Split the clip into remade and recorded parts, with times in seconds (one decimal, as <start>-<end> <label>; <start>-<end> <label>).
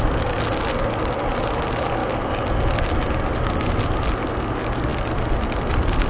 0.0-6.1 recorded